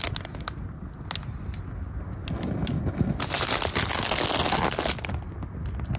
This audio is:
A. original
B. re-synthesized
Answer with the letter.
A